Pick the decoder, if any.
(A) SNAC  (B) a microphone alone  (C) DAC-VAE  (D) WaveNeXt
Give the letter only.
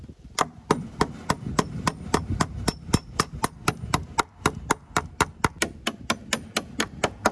B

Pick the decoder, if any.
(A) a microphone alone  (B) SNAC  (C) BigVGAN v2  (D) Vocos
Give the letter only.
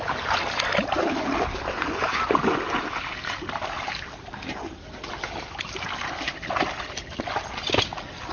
A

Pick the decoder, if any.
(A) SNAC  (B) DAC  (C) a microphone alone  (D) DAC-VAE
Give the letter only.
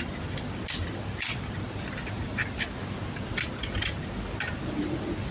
C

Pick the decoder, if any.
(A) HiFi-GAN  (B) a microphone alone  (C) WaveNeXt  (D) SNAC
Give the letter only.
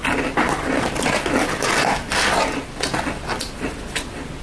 B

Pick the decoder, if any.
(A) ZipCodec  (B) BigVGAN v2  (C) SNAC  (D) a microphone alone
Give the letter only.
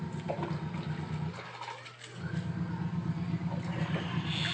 D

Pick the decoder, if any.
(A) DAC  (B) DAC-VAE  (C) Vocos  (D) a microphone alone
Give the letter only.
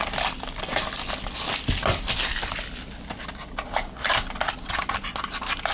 D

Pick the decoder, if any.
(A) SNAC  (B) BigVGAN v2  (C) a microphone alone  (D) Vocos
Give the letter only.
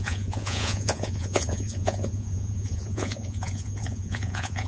D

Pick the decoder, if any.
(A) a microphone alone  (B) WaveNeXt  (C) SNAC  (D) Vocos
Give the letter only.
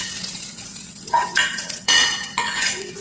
B